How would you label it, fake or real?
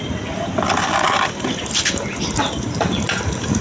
fake